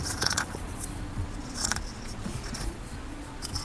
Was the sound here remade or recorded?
remade